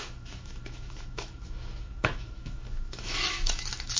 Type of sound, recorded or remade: remade